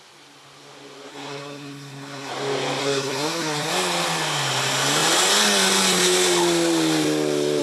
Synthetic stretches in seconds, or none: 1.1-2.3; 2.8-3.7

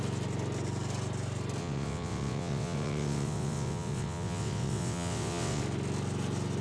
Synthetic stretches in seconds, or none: 1.6-5.6

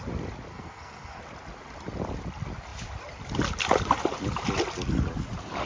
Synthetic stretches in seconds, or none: 0.5-1.2

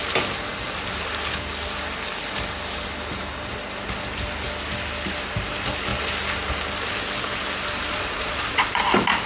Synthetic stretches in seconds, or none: 7.9-8.8

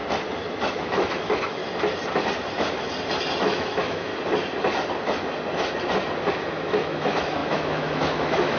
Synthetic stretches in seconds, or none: 0.8-1.6; 3.4-4.1; 6.5-8.6

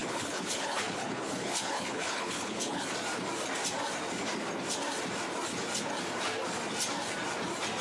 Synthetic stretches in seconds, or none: 0.0-2.9

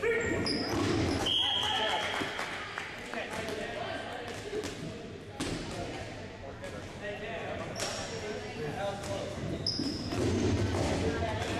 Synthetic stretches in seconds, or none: none